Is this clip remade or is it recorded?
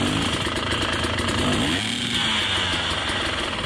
recorded